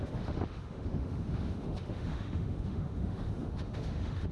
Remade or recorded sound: remade